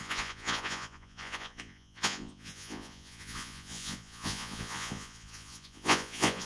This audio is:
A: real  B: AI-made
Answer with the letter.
B